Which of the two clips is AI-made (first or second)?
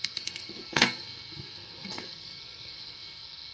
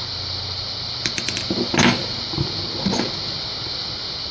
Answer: first